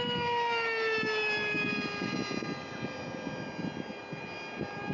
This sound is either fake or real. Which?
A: real